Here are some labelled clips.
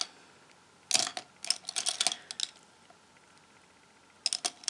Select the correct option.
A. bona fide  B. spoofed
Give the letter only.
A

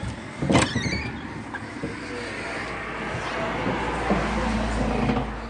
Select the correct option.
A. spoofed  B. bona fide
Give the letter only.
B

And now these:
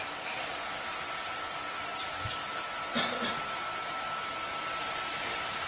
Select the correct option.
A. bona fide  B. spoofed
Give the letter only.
A